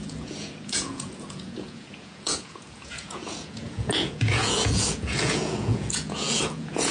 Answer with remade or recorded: remade